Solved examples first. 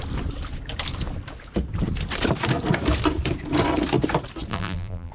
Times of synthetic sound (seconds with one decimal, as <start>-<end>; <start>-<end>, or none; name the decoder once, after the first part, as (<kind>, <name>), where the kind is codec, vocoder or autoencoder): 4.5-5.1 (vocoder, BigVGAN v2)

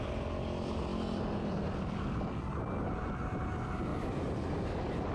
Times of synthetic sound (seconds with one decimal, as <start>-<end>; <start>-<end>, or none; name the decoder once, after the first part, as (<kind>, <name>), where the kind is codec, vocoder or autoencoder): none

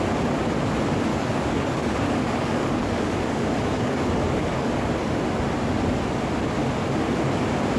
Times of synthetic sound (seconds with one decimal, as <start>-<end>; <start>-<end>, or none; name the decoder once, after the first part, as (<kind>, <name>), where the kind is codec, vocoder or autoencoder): 1.1-5.1 (codec, DAC)

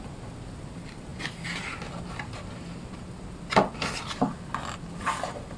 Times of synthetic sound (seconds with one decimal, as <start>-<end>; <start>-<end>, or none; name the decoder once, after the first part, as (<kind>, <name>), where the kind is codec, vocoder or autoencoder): none

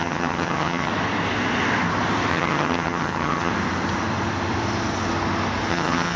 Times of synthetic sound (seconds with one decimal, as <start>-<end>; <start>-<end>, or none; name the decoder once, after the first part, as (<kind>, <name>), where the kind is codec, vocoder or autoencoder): 0.0-0.9 (vocoder, HiFi-GAN); 2.3-3.5; 5.7-6.2

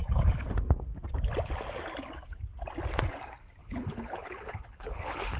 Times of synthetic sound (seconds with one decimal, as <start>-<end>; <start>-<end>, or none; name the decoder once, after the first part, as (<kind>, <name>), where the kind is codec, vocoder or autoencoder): 3.6-5.4 (codec, HILCodec)

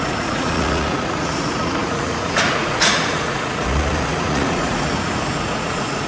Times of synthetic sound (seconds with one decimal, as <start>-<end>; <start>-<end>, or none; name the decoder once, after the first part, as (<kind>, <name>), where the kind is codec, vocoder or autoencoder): 0.0-6.1 (vocoder, Vocos)

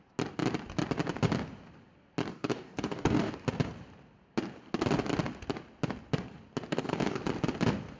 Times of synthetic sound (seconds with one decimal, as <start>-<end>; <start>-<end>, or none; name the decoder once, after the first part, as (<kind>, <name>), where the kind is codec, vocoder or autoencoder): 2.3-3.3 (codec, DAC); 6.7-7.2